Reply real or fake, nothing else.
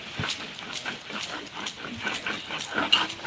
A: real